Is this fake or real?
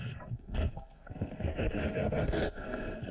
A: fake